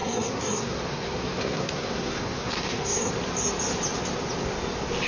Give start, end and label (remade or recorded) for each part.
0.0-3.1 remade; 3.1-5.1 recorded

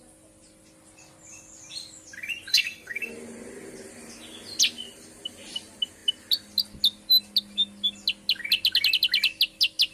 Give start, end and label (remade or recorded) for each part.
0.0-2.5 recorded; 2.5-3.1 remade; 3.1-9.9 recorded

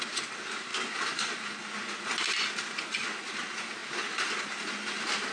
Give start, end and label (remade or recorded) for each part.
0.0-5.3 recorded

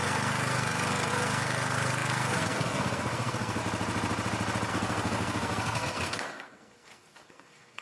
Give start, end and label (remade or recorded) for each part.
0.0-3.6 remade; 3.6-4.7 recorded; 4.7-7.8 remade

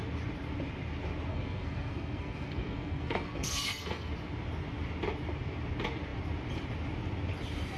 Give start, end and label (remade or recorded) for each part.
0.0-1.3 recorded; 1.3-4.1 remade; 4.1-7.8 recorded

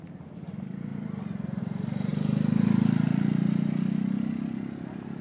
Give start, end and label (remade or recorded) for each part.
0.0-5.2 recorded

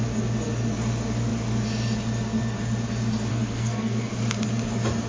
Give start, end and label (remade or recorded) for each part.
0.0-3.3 recorded; 3.3-4.1 remade; 4.1-5.1 recorded

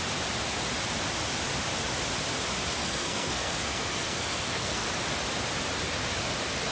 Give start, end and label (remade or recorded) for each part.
0.0-2.8 recorded; 2.8-4.9 remade; 4.9-6.7 recorded